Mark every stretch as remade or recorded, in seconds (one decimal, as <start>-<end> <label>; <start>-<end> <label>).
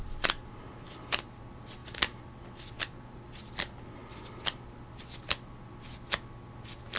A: 0.0-7.0 recorded